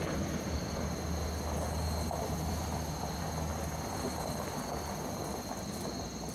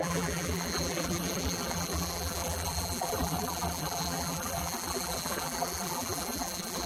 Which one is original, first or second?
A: first